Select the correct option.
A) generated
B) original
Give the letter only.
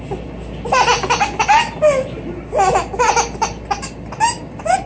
B